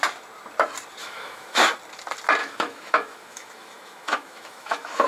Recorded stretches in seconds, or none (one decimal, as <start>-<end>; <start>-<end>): 0.0-1.0; 1.6-2.4